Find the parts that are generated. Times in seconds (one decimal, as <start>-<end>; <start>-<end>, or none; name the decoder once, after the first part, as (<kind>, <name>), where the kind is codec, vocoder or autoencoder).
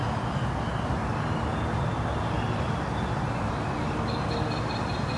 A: none